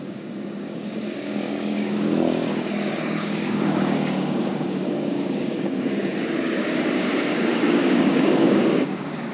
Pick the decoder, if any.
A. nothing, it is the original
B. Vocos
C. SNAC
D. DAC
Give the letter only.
D